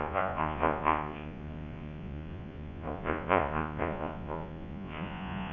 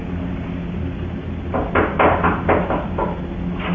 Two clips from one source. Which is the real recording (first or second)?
second